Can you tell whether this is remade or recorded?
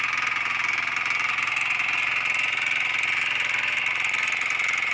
recorded